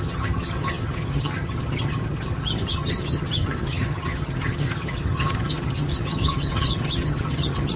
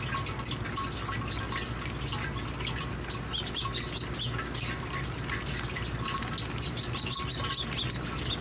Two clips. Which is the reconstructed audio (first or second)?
first